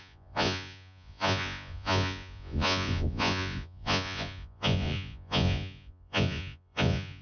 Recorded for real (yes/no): no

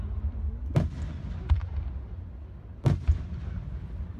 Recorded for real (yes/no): yes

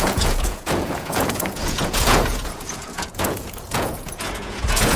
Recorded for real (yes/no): no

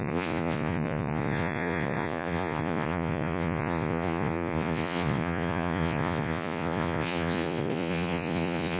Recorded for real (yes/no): no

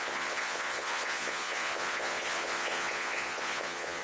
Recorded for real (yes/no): no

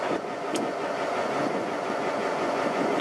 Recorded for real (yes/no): no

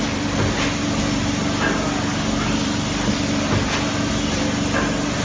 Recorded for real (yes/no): yes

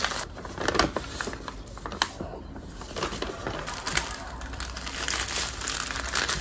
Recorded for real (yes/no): yes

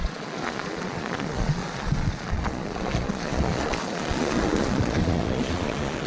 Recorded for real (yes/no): no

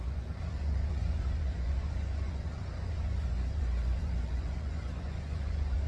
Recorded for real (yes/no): no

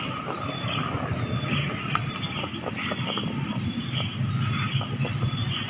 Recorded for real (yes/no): yes